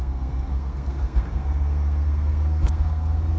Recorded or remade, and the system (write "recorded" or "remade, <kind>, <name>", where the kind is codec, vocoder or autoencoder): remade, codec, SNAC